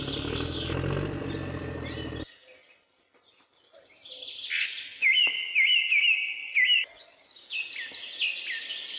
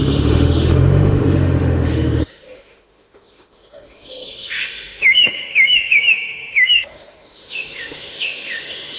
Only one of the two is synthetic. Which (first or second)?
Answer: second